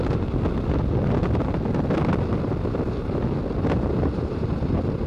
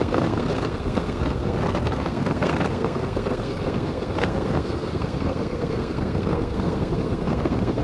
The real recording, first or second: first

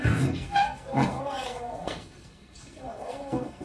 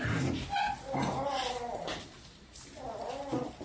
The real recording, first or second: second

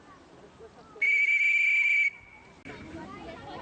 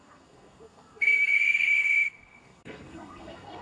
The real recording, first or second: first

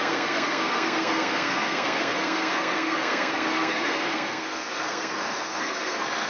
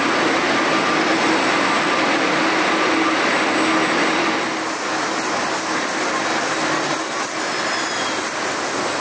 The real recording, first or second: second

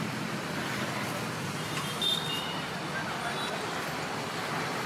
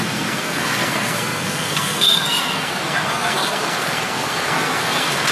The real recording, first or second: first